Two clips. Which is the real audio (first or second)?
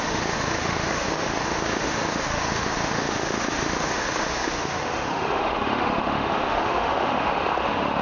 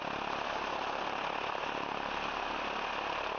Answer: second